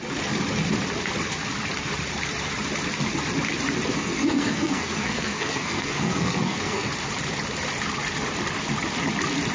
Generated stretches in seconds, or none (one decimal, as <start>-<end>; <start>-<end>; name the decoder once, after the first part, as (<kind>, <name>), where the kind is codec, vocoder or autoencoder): 3.9-6.9 (codec, SNAC)